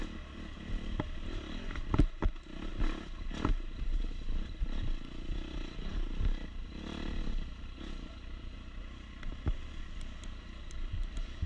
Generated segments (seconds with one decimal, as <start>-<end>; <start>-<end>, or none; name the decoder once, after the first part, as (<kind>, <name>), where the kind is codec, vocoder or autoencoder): none